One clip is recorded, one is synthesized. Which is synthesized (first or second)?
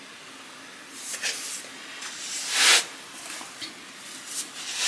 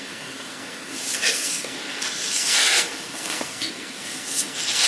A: second